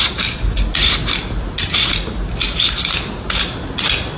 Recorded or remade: recorded